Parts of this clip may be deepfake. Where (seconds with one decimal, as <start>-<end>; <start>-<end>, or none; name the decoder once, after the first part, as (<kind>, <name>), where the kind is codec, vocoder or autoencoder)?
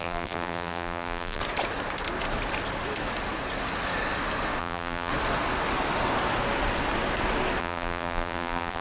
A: 0.0-1.4 (vocoder, BigVGAN v2); 4.6-5.1; 7.6-8.8